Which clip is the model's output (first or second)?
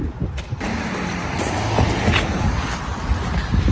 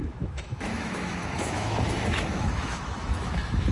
second